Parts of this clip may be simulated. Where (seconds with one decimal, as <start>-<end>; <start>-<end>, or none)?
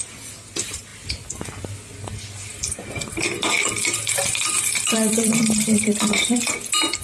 2.5-3.5; 4.1-6.4